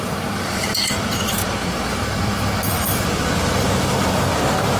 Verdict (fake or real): fake